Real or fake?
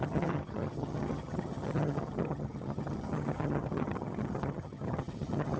fake